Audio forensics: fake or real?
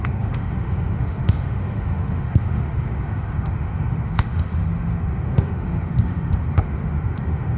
fake